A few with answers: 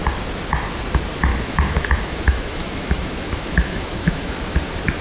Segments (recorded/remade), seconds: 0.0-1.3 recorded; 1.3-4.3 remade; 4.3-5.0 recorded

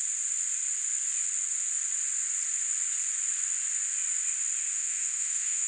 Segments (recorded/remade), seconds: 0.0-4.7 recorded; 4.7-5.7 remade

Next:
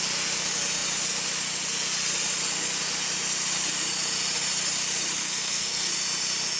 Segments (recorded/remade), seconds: 0.0-5.2 recorded; 5.2-5.9 remade; 5.9-6.6 recorded

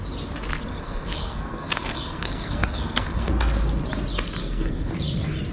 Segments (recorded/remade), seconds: 0.0-0.7 recorded; 0.7-3.3 remade; 3.3-4.4 recorded; 4.4-4.9 remade; 4.9-5.5 recorded

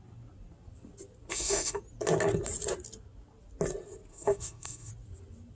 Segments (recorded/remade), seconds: 0.0-1.3 recorded; 1.3-1.8 remade; 1.8-4.1 recorded; 4.1-4.9 remade; 4.9-5.5 recorded

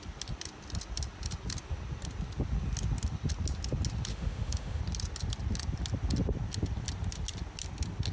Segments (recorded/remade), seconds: 0.0-4.1 recorded; 4.1-4.8 remade; 4.8-8.1 recorded